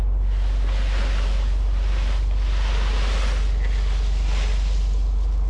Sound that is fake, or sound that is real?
real